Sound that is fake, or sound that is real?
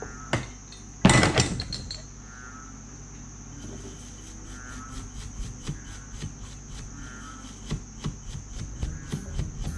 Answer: real